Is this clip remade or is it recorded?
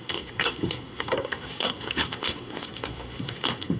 remade